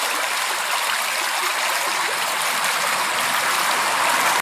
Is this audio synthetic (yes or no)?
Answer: no